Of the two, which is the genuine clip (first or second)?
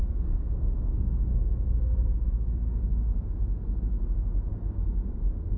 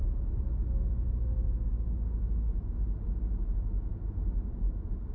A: second